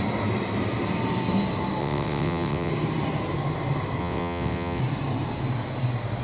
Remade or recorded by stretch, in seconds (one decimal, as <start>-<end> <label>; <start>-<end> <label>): 0.0-1.8 recorded; 1.8-2.7 remade; 2.7-4.0 recorded; 4.0-4.8 remade; 4.8-6.2 recorded